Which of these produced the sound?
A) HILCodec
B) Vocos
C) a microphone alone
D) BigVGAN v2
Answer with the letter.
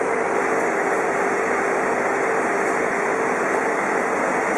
C